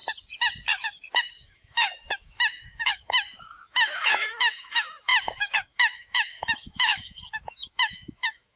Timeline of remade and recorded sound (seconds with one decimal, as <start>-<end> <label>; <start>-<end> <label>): 0.0-1.2 recorded; 1.2-8.6 remade